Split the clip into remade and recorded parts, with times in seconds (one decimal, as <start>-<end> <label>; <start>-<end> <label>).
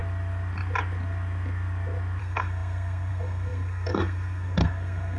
0.0-2.2 recorded; 2.2-5.2 remade